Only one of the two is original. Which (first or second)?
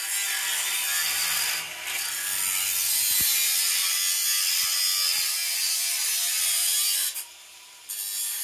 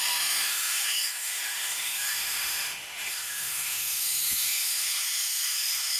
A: first